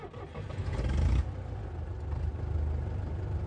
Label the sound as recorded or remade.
recorded